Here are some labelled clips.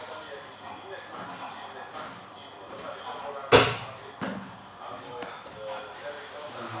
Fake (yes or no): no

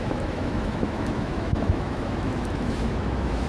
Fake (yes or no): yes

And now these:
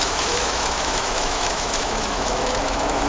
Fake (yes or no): yes